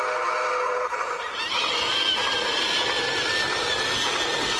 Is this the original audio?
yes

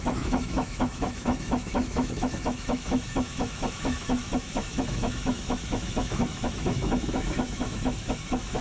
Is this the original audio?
no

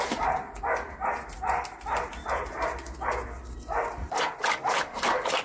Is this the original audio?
yes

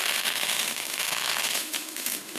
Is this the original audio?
no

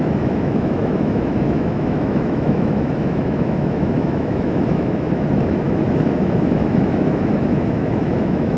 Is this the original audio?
no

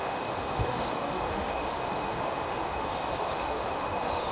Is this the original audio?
no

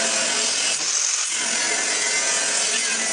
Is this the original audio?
yes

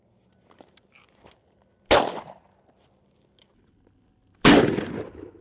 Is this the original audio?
yes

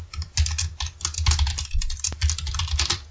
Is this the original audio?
yes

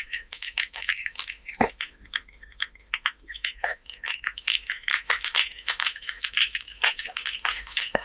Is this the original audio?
no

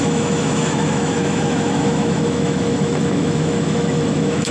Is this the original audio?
no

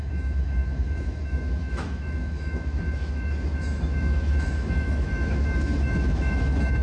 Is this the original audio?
no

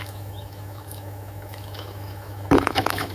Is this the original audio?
no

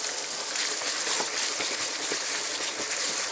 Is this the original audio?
yes